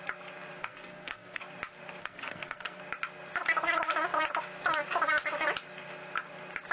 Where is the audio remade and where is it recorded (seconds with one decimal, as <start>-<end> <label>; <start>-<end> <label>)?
0.0-0.6 recorded; 0.6-1.4 remade; 1.4-2.0 recorded; 2.0-2.8 remade; 2.8-6.7 recorded